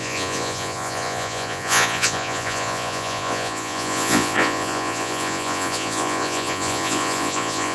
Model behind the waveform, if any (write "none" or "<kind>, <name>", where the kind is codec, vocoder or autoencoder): vocoder, Vocos